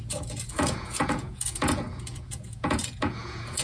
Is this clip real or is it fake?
fake